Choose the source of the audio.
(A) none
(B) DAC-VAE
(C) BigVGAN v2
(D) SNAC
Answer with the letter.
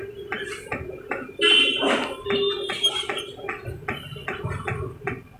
A